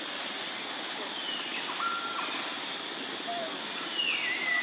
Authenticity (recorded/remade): recorded